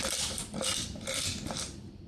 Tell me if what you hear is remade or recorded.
recorded